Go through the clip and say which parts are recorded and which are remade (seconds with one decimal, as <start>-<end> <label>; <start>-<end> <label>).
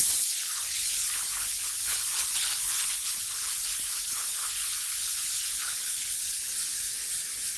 0.0-6.5 remade; 6.5-7.6 recorded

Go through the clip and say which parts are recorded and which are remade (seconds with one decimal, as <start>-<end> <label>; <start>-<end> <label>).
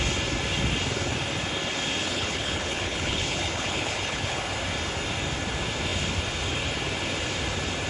0.0-2.0 recorded; 2.0-4.4 remade; 4.4-7.9 recorded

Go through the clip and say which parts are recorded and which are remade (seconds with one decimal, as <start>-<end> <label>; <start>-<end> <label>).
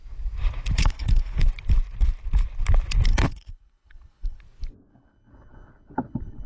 0.0-0.8 recorded; 0.8-1.4 remade; 1.4-3.1 recorded; 3.1-4.4 remade; 4.4-4.9 recorded; 4.9-6.5 remade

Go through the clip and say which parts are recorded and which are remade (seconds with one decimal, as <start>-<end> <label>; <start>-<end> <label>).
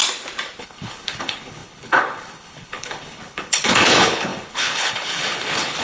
0.0-0.6 recorded; 0.6-5.8 remade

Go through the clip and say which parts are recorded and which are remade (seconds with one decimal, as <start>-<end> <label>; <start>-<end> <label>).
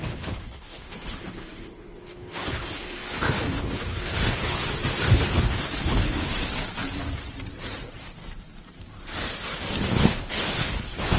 0.0-4.6 remade; 4.6-5.1 recorded; 5.1-6.3 remade; 6.3-9.9 recorded; 9.9-11.2 remade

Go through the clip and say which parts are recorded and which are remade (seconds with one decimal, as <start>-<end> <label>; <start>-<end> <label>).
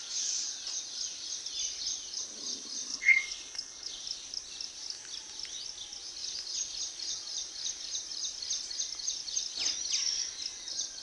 0.0-2.9 recorded; 2.9-4.0 remade; 4.0-11.0 recorded